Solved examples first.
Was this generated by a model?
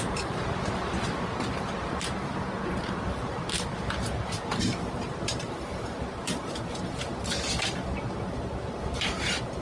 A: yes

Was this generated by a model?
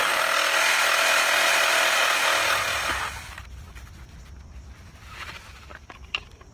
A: no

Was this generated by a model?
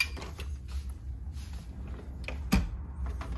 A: no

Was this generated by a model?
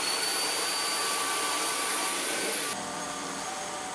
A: yes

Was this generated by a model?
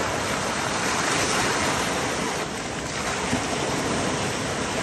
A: no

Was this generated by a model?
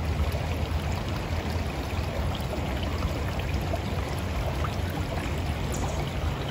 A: no